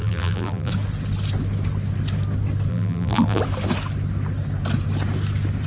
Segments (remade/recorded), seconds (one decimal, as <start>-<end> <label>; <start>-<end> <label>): 0.0-0.7 remade; 0.7-2.7 recorded; 2.7-3.4 remade; 3.4-5.7 recorded